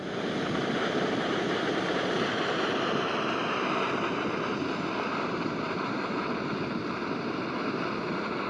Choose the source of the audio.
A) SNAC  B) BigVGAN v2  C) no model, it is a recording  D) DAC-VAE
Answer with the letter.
B